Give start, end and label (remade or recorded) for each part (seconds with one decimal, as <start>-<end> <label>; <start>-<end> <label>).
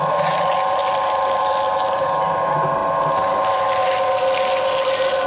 0.0-5.3 recorded